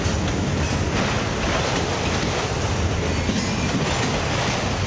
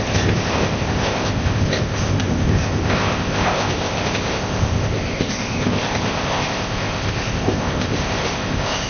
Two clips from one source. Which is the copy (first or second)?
second